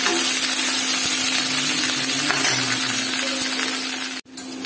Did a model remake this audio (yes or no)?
no